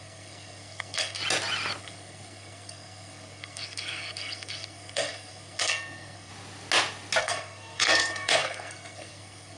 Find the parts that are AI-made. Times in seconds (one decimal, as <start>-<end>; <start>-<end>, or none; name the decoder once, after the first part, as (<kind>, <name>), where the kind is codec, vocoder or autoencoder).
0.0-1.2 (codec, SNAC); 1.8-6.3; 7.2-9.6